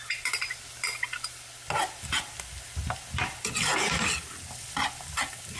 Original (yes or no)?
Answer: yes